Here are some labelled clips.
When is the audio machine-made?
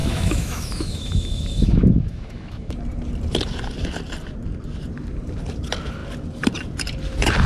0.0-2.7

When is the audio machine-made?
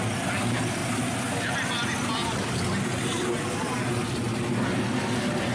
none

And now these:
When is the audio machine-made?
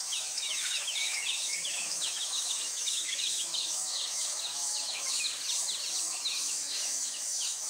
0.0-5.3; 6.0-7.7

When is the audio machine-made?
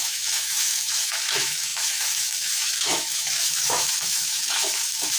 0.0-5.2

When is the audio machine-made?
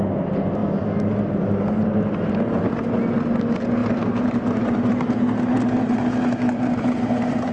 none